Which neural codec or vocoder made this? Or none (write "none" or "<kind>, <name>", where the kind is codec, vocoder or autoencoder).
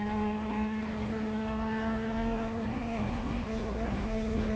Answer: codec, SNAC